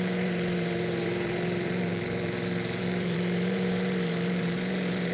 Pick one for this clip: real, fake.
fake